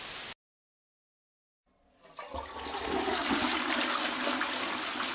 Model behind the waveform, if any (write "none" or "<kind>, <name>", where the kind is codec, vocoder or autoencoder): none